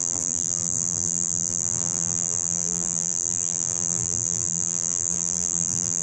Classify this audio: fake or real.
fake